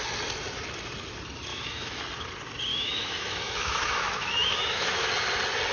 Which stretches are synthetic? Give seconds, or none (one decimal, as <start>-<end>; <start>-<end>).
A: 1.5-2.0; 2.7-5.1

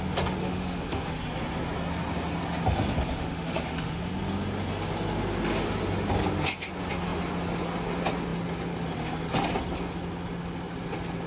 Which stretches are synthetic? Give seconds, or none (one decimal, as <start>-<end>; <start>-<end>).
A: 0.4-1.2; 3.1-4.1

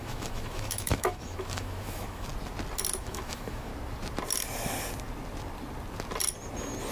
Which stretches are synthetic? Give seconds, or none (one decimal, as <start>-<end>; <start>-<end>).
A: 0.0-2.3; 3.0-3.7

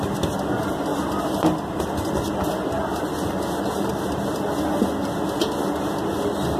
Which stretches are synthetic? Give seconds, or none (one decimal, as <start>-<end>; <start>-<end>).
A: none

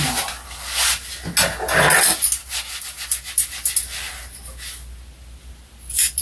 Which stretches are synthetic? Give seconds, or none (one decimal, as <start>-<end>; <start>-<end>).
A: none

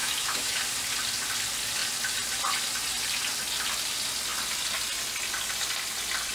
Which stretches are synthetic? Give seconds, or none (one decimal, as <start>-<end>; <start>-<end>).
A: 0.0-0.6